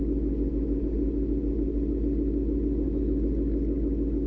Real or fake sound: real